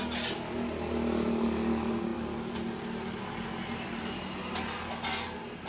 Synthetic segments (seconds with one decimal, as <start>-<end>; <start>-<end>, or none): none

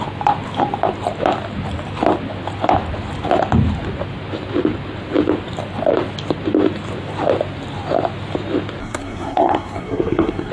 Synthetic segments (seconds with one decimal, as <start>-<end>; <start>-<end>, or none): 8.8-10.5

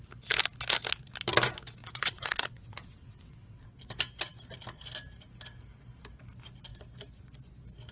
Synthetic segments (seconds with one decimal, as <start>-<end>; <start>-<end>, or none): 1.8-3.9

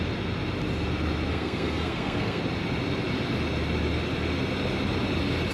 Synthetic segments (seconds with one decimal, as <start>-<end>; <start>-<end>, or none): 1.3-2.4

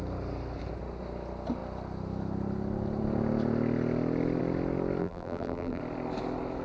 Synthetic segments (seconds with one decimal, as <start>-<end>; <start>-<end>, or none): 5.0-5.8

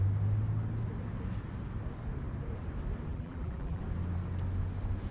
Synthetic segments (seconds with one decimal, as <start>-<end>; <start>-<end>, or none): 3.1-3.8

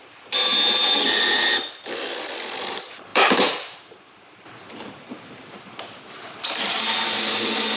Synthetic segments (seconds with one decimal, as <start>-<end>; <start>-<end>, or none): 3.1-5.6